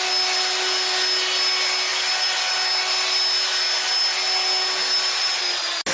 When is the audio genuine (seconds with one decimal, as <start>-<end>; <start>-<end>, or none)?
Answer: 0.0-5.9